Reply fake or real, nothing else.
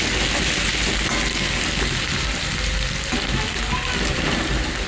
real